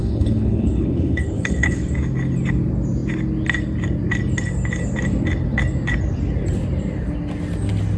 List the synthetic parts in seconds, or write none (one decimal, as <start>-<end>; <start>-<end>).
0.0-1.8